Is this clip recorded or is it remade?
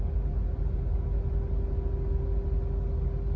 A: recorded